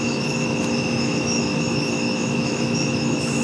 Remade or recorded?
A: remade